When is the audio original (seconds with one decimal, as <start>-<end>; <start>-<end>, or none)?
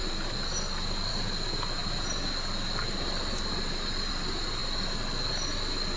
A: 0.0-6.0